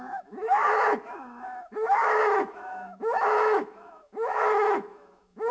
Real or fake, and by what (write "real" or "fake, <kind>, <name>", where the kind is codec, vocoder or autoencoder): fake, autoencoder, DAC-VAE